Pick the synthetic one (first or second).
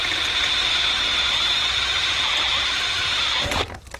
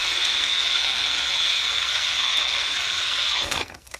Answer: second